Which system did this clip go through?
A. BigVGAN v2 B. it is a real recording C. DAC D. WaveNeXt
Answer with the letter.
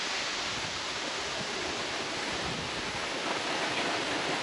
B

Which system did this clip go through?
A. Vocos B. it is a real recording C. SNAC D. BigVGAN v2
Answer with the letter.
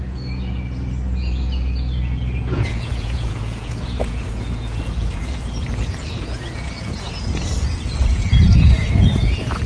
A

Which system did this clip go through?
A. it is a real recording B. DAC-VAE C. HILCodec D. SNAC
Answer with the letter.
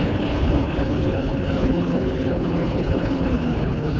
C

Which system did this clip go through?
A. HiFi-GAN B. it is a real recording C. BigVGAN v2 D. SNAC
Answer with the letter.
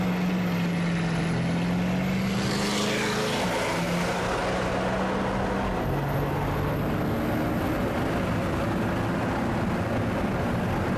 B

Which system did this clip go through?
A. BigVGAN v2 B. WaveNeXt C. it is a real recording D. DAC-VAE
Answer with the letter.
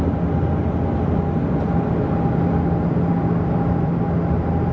C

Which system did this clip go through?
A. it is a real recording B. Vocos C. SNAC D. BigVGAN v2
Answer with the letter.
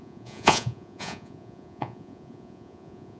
B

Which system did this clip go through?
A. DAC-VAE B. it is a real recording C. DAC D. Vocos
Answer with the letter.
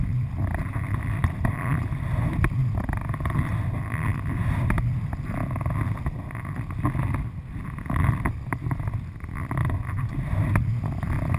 B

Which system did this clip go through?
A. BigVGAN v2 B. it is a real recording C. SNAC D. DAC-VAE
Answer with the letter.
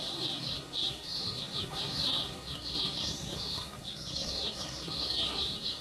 C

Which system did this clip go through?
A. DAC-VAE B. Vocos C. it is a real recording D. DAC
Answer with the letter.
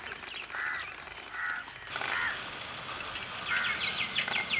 C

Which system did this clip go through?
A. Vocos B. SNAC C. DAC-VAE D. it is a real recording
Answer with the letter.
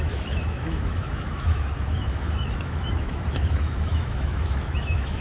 C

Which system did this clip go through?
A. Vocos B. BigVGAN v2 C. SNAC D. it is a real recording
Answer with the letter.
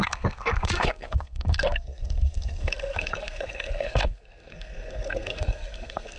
C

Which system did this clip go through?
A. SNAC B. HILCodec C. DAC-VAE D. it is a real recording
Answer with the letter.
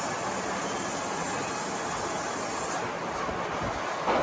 D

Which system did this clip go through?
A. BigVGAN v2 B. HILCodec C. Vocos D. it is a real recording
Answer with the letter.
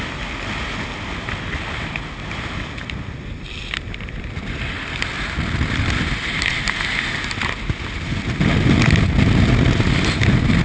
D